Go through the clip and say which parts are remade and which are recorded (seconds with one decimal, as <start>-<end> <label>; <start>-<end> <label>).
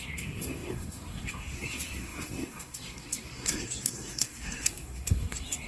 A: 0.0-5.7 remade